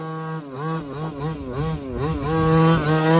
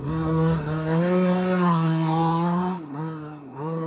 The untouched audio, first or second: first